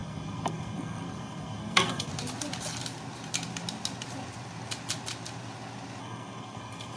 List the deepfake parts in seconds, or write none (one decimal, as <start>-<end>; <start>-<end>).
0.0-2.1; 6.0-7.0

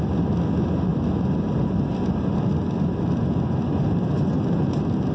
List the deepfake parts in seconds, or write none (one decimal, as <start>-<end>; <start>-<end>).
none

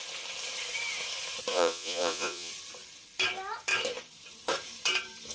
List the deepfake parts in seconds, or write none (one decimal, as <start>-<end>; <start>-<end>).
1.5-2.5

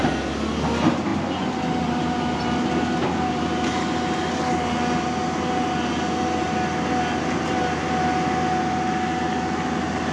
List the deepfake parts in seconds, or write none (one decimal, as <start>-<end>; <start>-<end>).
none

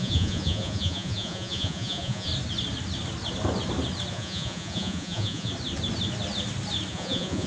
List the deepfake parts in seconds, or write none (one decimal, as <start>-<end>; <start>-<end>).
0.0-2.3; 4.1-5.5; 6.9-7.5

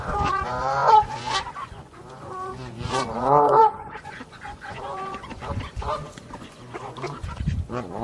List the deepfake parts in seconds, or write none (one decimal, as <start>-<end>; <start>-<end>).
0.0-8.0

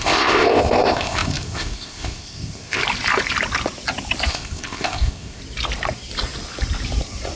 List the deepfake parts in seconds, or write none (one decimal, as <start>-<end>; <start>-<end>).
0.0-2.8; 4.3-5.4